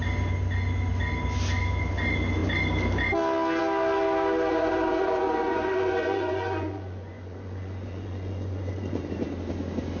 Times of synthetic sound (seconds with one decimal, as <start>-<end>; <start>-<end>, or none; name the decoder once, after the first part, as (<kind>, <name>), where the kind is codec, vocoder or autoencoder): 4.5-9.0 (vocoder, Vocos)